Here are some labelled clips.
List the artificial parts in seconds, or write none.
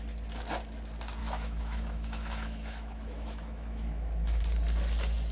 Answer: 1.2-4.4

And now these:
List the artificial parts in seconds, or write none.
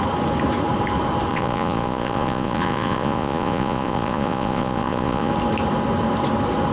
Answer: 1.3-5.3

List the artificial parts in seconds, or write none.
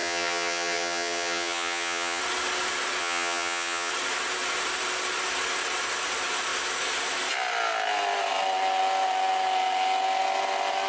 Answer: 0.0-2.2; 3.0-3.9